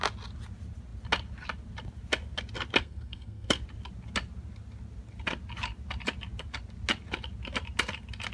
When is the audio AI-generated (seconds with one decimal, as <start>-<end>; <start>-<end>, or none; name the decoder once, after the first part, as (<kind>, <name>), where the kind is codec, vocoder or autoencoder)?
2.8-3.6 (codec, SNAC)